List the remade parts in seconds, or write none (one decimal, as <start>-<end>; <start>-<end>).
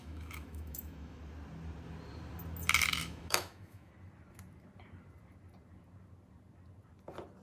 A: 0.0-1.2; 3.0-3.9